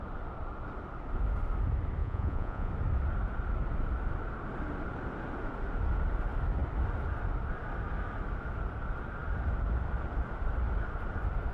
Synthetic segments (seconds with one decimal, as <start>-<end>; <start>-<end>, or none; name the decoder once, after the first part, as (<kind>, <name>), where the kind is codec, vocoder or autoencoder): 2.0-2.7 (vocoder, Vocos)

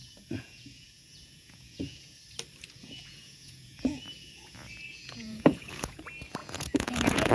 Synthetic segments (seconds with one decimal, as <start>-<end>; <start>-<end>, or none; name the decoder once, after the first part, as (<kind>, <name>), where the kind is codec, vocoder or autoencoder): 0.0-2.2 (vocoder, Vocos); 2.8-6.0; 6.4-7.3

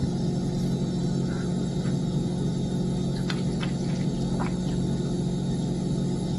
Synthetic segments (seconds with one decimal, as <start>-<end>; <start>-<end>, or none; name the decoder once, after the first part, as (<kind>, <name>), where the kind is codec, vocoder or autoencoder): none

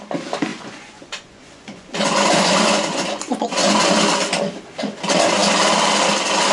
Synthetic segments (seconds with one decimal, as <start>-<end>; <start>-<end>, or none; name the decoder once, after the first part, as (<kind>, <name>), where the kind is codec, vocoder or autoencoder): 0.5-4.0 (vocoder, Vocos)

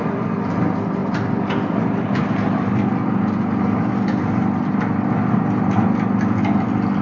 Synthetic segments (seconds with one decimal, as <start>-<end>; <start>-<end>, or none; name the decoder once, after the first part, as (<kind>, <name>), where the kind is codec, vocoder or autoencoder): none

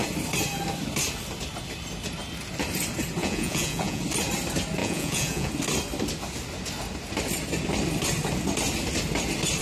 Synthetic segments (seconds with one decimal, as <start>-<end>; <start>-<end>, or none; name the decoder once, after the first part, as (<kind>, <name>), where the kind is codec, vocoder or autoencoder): 3.2-4.0 (vocoder, Vocos); 4.8-5.5